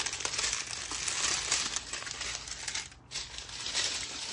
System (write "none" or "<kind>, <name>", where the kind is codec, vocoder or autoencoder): none